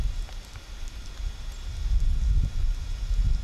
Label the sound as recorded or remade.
recorded